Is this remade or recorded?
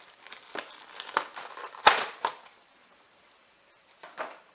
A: recorded